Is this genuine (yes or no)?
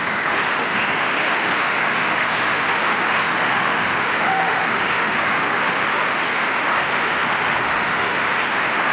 no